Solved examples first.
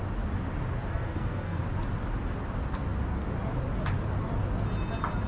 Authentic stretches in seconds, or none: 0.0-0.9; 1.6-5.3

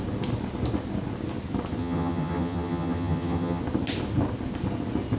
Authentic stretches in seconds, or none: 0.0-1.8; 3.6-5.2

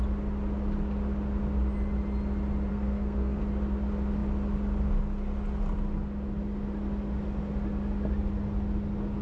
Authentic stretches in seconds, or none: 0.0-2.7; 3.4-9.2

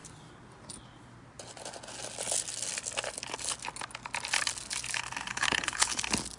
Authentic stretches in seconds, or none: 0.0-5.3; 6.0-6.4

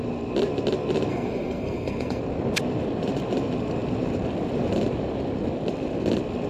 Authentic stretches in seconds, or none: 0.0-1.1; 2.2-6.5

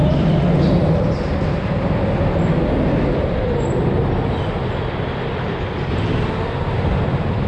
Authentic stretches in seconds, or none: 0.0-7.5

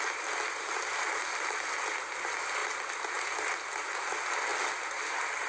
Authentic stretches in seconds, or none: 0.0-5.5

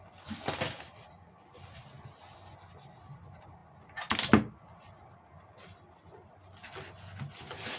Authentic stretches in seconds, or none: 0.0-7.8